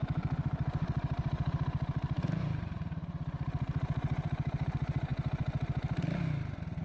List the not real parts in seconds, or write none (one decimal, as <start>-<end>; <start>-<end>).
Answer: 0.0-5.1